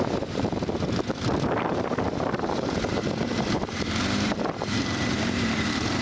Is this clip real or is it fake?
fake